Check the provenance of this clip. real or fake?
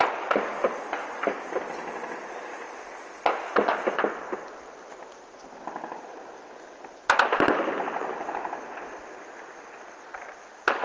real